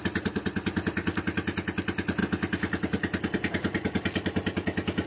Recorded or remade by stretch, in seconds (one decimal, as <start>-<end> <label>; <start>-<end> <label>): 0.0-5.1 recorded